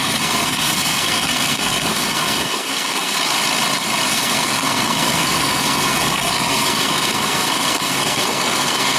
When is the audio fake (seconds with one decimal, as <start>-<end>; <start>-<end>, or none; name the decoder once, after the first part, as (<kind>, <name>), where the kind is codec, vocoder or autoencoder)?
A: 0.0-3.2 (codec, SNAC); 4.1-9.0